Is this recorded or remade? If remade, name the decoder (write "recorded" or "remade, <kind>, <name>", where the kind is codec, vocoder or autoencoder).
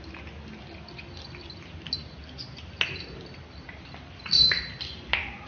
recorded